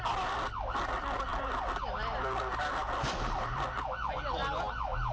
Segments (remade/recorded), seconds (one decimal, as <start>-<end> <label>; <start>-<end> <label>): 0.0-5.1 recorded